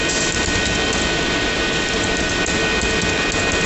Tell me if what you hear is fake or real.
real